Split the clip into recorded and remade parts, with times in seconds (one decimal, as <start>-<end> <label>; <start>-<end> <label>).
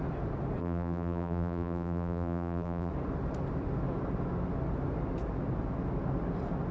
0.0-0.6 recorded; 0.6-2.9 remade; 2.9-6.7 recorded